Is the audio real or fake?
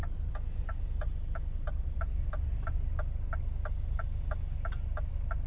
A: real